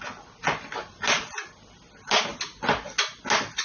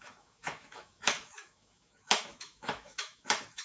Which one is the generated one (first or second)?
second